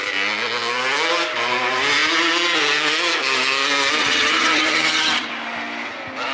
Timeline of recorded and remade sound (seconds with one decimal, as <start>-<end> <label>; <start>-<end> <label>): 0.0-4.0 recorded; 4.0-5.3 remade; 5.3-6.3 recorded